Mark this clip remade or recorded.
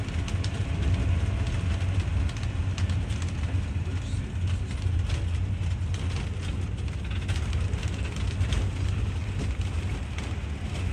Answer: recorded